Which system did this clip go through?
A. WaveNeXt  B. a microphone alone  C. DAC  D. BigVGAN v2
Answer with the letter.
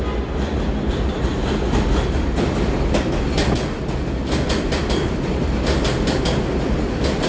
B